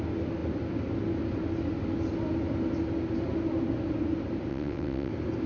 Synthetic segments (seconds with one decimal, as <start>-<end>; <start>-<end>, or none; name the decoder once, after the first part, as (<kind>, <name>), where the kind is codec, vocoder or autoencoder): 4.5-5.1 (vocoder, WaveNeXt)